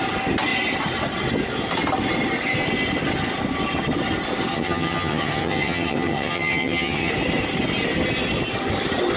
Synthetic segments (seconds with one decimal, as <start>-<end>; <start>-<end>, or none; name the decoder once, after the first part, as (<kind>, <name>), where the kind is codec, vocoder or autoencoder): 4.5-7.1 (vocoder, HiFi-GAN)